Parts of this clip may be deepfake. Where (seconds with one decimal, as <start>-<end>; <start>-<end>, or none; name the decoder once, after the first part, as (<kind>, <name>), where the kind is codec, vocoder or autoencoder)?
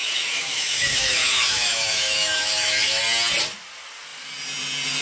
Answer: 0.0-3.0 (autoencoder, DAC-VAE)